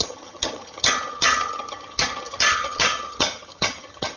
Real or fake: fake